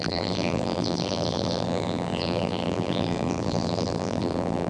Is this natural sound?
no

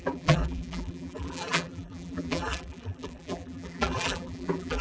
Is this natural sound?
no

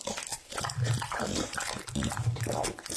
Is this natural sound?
no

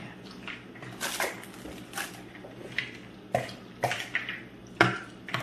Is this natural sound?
yes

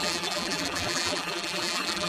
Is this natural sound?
no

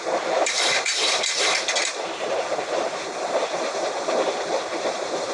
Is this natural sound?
no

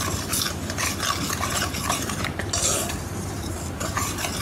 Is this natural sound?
yes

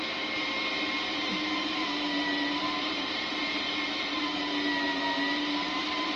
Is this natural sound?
no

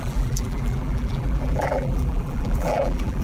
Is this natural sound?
no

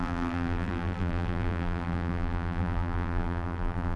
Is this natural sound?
no